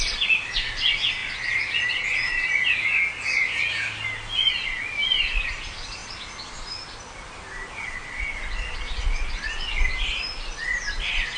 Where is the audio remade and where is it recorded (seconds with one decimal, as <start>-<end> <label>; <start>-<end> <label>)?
0.0-1.2 remade; 1.2-4.5 recorded; 4.5-11.4 remade